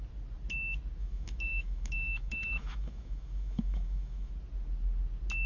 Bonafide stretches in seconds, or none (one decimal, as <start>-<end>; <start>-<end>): 0.0-1.0; 4.3-5.5